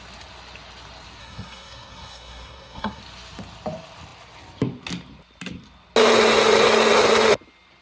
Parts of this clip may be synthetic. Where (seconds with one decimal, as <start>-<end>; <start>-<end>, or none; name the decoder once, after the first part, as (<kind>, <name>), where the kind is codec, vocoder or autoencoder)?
1.2-3.0 (codec, SNAC)